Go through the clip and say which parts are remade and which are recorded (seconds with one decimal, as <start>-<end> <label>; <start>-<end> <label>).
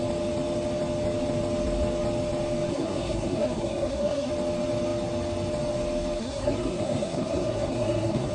0.0-2.7 recorded; 2.7-4.3 remade; 4.3-6.2 recorded; 6.2-8.3 remade